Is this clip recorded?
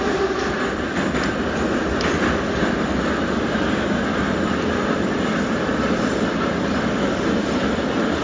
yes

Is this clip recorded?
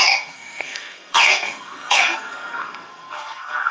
no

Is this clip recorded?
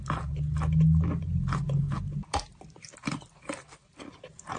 yes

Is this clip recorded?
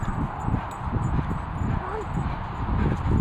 yes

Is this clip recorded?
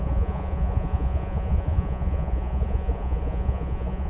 no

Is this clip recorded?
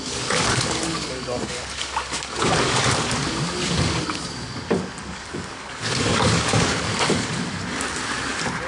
no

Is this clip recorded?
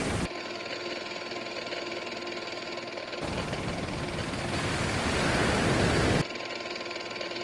yes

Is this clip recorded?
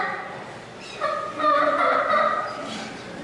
yes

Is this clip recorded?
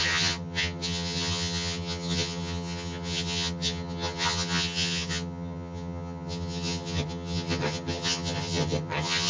no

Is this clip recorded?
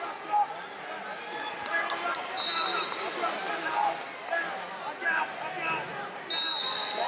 yes